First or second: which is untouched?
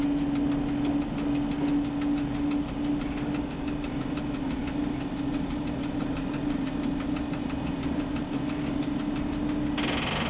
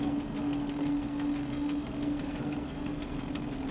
first